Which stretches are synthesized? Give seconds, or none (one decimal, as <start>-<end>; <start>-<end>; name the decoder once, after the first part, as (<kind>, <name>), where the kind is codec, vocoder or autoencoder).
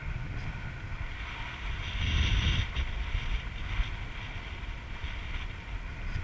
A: none